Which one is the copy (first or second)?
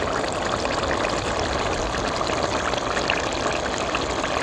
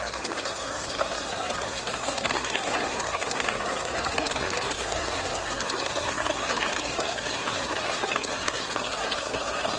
second